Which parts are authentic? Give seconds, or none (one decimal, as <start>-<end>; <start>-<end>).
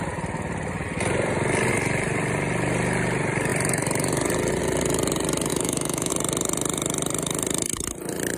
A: 0.0-5.5; 6.1-8.4